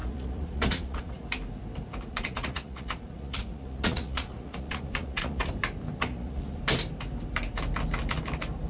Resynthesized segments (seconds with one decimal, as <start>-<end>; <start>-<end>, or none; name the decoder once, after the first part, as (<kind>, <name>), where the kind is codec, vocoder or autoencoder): 0.0-1.3 (vocoder, Vocos); 2.1-5.5; 6.1-6.6

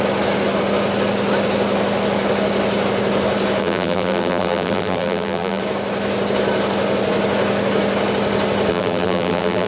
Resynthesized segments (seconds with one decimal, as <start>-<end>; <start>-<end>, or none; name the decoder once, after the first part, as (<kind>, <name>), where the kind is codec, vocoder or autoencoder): 3.6-5.6 (vocoder, BigVGAN v2); 8.7-9.7

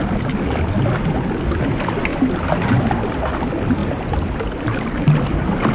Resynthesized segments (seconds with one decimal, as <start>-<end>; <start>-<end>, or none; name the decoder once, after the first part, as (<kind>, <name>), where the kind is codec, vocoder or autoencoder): 3.8-4.3 (vocoder, BigVGAN v2)

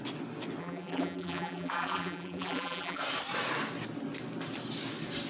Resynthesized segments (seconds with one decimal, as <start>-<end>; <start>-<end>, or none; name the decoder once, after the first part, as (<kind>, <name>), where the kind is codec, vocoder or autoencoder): 0.6-3.0 (vocoder, BigVGAN v2)

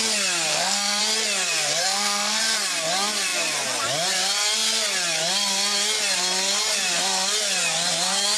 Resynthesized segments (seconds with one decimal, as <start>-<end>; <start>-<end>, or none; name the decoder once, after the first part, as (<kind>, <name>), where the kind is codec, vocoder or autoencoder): 0.5-1.0 (codec, SNAC); 1.8-2.4

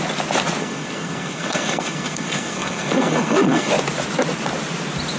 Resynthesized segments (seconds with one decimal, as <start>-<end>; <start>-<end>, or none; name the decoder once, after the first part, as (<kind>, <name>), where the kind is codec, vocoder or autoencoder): 0.6-3.7 (codec, SNAC)